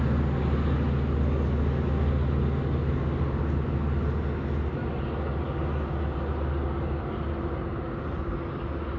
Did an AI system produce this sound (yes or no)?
no